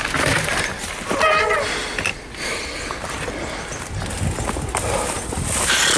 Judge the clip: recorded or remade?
recorded